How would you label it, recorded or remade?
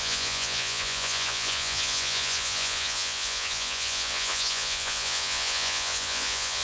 remade